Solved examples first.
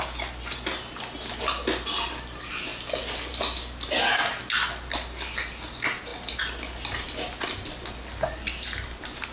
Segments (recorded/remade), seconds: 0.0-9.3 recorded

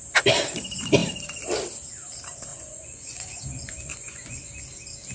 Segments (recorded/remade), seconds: 0.0-2.5 recorded; 2.5-3.4 remade; 3.4-3.9 recorded; 3.9-4.5 remade; 4.5-5.1 recorded

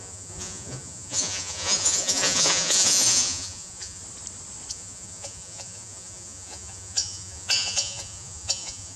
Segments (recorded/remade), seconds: 0.0-4.0 remade; 4.0-4.7 recorded; 4.7-9.0 remade

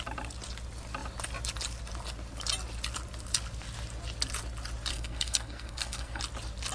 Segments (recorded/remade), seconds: 0.0-4.9 recorded; 4.9-6.2 remade; 6.2-6.7 recorded

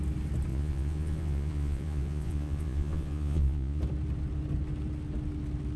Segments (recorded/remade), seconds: 0.0-0.5 recorded; 0.5-3.8 remade; 3.8-5.8 recorded

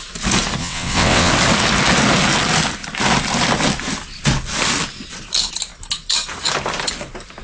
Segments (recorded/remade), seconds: 0.0-0.6 recorded; 0.6-1.3 remade; 1.3-7.4 recorded

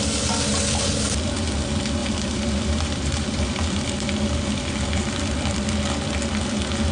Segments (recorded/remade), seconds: 0.0-2.0 recorded; 2.0-6.1 remade; 6.1-6.9 recorded